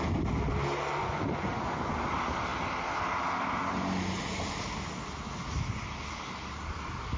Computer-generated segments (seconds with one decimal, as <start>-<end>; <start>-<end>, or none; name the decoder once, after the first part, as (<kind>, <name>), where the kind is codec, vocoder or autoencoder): 1.0-1.9 (vocoder, Vocos)